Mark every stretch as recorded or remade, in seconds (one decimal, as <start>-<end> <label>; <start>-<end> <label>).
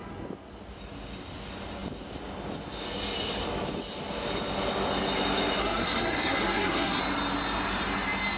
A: 0.0-5.6 recorded; 5.6-7.0 remade; 7.0-8.4 recorded